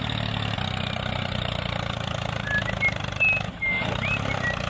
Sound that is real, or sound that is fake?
real